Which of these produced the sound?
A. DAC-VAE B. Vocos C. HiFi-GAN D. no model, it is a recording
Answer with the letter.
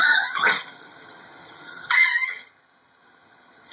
C